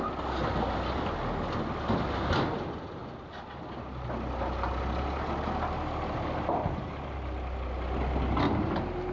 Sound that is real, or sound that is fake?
real